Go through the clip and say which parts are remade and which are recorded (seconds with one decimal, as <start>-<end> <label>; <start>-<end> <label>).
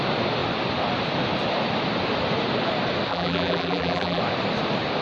0.0-3.1 recorded; 3.1-4.2 remade; 4.2-5.0 recorded